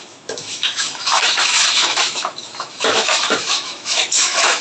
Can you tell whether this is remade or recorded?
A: remade